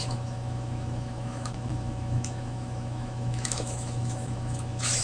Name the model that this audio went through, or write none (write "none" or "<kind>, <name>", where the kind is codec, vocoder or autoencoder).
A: autoencoder, DAC-VAE